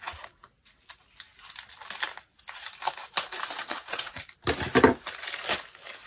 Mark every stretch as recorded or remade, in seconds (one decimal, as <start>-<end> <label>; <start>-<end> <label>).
0.0-3.6 recorded; 3.6-4.2 remade; 4.2-6.1 recorded